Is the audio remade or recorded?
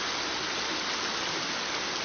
recorded